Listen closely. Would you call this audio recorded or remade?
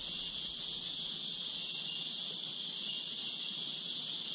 remade